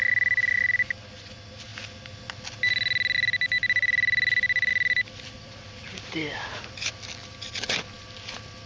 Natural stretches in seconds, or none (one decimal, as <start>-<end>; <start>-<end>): 0.0-4.7; 6.9-8.7